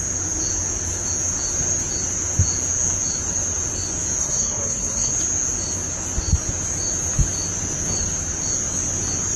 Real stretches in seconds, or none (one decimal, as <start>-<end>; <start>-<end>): 0.0-4.2; 5.1-9.4